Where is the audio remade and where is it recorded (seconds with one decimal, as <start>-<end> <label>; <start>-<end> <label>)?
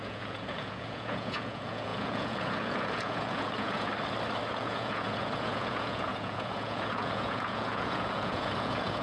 0.0-3.9 remade; 3.9-4.5 recorded; 4.5-9.0 remade